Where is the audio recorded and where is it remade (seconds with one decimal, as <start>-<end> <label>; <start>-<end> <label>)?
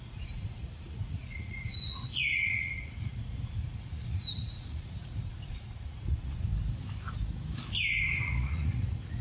0.0-6.5 remade; 6.5-8.2 recorded; 8.2-9.2 remade